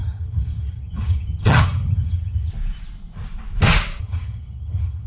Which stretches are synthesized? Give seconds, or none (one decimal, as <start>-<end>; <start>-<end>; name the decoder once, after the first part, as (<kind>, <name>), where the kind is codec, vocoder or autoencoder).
0.0-2.5 (vocoder, HiFi-GAN); 4.0-5.1